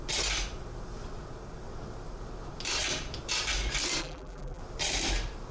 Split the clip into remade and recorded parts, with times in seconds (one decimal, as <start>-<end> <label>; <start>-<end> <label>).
0.0-4.0 recorded; 4.0-4.6 remade; 4.6-5.5 recorded